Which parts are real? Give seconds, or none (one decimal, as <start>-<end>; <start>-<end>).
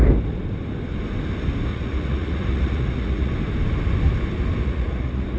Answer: 0.0-1.7; 3.3-4.6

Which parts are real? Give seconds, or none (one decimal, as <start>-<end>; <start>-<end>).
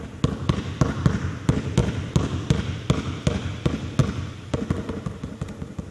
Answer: 0.0-5.9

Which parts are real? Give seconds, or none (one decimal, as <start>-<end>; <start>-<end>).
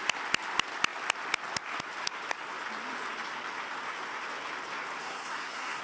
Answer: 0.0-5.0